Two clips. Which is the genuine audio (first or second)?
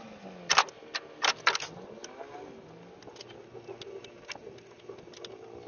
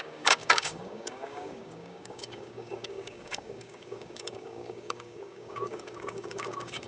first